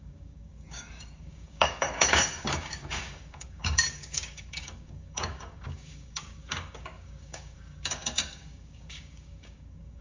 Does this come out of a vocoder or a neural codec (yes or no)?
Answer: yes